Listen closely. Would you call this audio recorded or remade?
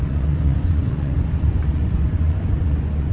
remade